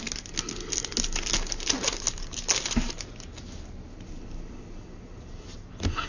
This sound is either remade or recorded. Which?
recorded